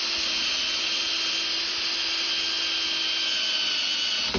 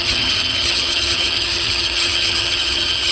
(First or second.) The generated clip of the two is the second